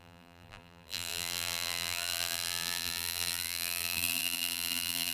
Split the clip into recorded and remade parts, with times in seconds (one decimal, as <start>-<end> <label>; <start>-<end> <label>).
0.0-5.1 remade